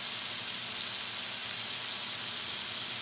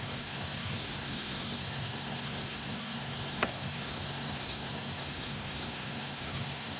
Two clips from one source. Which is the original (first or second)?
first